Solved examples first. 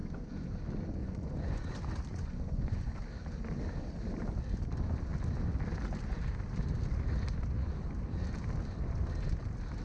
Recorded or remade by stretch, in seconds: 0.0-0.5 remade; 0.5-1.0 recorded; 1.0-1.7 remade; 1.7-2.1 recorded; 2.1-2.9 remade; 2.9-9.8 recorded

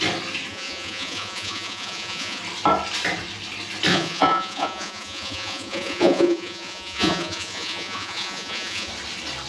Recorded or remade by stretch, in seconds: 0.0-0.5 recorded; 0.5-2.4 remade; 2.4-3.9 recorded; 3.9-8.9 remade; 8.9-9.5 recorded

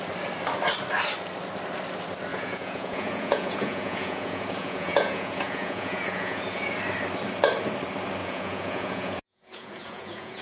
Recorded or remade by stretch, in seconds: 0.0-2.3 recorded; 2.3-6.6 remade; 6.6-8.2 recorded; 8.2-10.4 remade

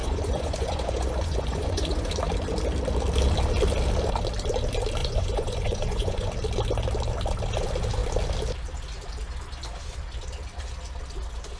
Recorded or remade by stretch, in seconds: 0.0-2.1 remade; 2.1-5.0 recorded; 5.0-6.3 remade; 6.3-11.6 recorded

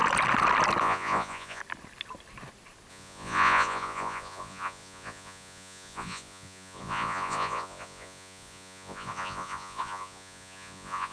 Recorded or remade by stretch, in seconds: 0.0-0.8 recorded; 0.8-1.6 remade; 1.6-2.9 recorded; 2.9-11.1 remade

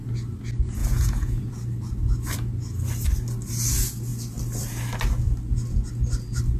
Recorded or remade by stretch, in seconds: 0.0-0.8 recorded; 0.8-1.5 remade; 1.5-6.6 recorded